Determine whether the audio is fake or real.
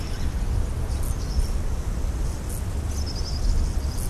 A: real